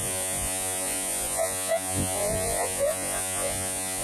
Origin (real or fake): fake